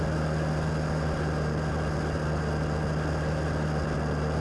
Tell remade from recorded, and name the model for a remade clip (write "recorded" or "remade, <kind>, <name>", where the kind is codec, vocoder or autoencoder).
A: recorded